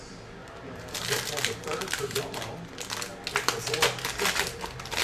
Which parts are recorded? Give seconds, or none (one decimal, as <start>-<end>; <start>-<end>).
0.0-0.4; 2.2-5.0